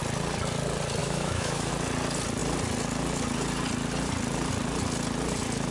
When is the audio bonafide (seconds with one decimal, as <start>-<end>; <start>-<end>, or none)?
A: 0.0-1.0; 1.7-5.7